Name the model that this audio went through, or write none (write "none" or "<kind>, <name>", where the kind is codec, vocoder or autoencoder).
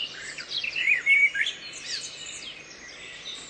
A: vocoder, BigVGAN v2